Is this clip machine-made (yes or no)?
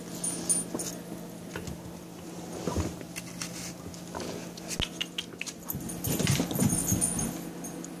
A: no